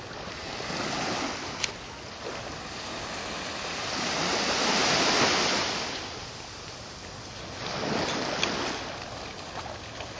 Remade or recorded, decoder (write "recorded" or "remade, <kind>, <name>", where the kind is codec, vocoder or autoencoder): recorded